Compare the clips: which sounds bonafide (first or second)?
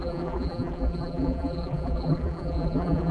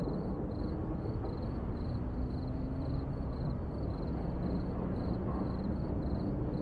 second